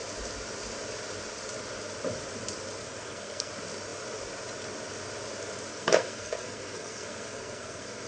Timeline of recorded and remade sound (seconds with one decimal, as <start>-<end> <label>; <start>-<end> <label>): 0.0-2.8 recorded; 2.8-3.5 remade; 3.5-5.7 recorded; 5.7-8.1 remade